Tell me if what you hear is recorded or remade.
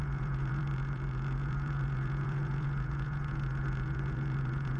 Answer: remade